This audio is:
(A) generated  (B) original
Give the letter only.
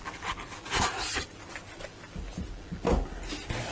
B